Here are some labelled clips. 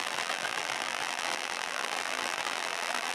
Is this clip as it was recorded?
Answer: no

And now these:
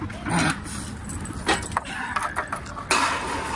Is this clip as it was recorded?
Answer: yes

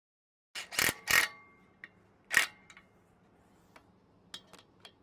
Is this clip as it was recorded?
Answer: yes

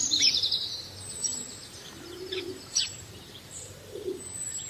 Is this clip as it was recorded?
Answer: no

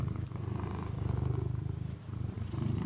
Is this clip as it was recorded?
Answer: no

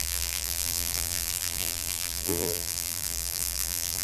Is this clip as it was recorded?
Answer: no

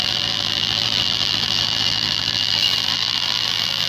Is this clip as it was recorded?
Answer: no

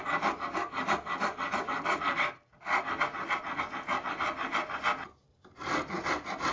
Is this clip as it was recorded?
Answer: yes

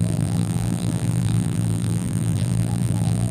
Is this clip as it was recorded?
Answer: no